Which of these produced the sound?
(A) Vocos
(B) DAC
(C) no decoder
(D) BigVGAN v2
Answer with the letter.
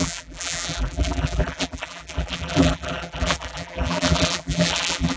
D